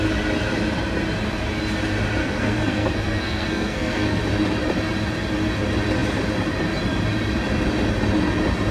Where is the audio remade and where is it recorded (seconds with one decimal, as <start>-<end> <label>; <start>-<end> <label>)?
0.0-2.2 recorded; 2.2-4.2 remade; 4.2-8.7 recorded